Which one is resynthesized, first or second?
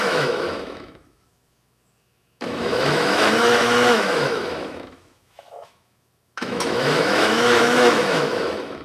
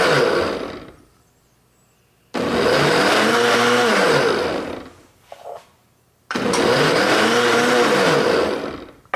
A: first